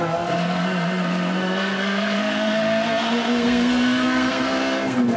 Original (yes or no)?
no